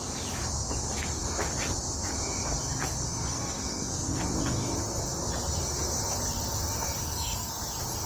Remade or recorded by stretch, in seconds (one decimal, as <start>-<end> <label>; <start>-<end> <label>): 0.0-3.3 recorded; 3.3-4.2 remade; 4.2-7.0 recorded; 7.0-7.5 remade; 7.5-8.1 recorded